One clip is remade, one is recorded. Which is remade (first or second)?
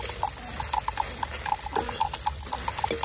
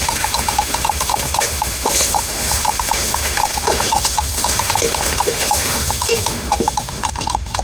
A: second